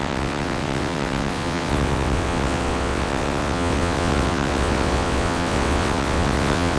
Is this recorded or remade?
remade